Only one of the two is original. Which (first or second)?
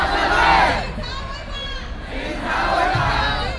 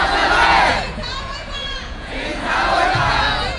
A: first